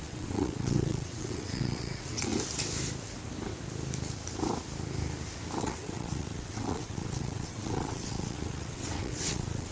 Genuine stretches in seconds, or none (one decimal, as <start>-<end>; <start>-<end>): 2.3-5.6